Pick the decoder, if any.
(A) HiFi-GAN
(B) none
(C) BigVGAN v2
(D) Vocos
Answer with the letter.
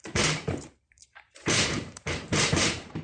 C